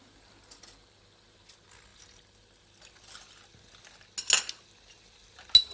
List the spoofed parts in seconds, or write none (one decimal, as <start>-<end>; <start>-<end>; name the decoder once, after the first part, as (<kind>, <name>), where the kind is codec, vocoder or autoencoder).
none